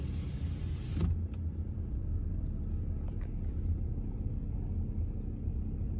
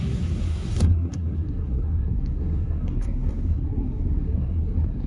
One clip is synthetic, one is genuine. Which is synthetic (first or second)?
second